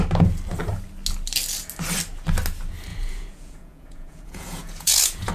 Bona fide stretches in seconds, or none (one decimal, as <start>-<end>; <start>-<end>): 0.0-2.9